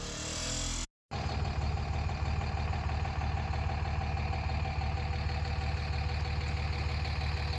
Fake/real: real